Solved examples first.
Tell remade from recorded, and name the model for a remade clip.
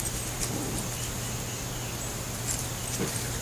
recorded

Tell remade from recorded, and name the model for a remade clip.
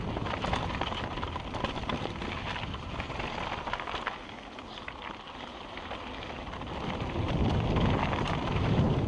recorded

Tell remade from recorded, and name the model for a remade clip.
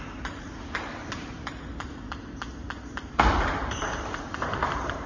remade, vocoder, BigVGAN v2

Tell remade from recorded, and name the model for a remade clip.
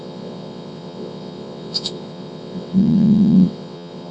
remade, vocoder, WaveNeXt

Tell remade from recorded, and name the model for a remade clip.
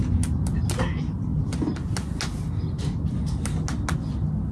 recorded